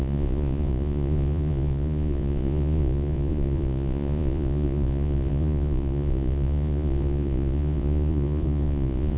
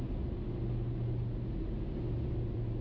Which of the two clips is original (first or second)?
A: second